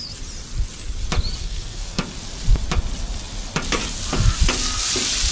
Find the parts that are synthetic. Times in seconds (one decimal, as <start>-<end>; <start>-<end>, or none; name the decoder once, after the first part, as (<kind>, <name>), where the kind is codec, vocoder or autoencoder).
1.4-2.0 (codec, SNAC)